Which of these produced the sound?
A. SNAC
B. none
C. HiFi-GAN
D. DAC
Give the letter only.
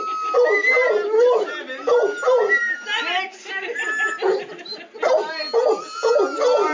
B